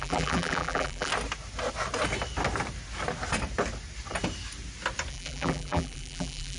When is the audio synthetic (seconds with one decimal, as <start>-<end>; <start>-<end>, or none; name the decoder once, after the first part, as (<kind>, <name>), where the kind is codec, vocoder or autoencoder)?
0.0-1.1 (vocoder, BigVGAN v2); 5.1-6.6